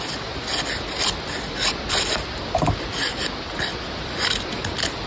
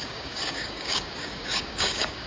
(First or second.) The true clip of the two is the first